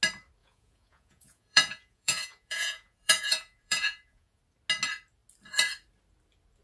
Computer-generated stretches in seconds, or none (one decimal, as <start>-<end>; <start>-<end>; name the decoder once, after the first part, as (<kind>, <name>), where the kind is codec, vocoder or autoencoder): 0.4-4.4 (vocoder, Vocos)